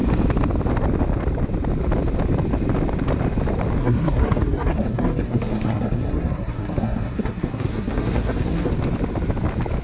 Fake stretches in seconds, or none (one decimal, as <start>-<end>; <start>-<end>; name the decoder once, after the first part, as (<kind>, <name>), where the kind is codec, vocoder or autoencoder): 3.8-8.7 (codec, SNAC)